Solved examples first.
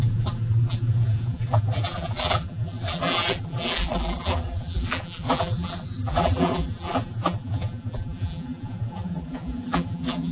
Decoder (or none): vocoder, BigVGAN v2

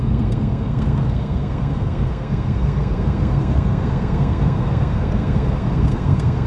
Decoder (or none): codec, SNAC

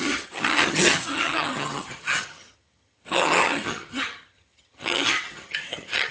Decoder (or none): vocoder, HiFi-GAN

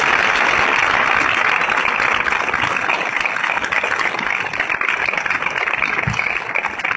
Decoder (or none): none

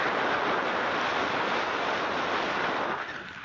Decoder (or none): none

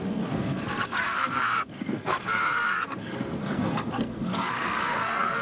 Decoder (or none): codec, SNAC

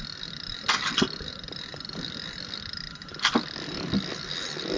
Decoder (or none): none